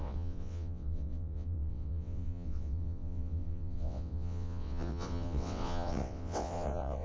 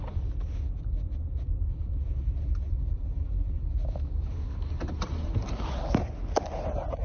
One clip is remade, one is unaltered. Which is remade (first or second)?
first